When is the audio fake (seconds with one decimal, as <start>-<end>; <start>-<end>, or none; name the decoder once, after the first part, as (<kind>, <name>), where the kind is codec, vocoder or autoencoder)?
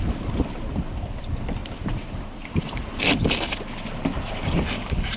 1.6-3.0 (vocoder, BigVGAN v2)